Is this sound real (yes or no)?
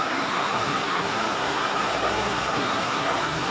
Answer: no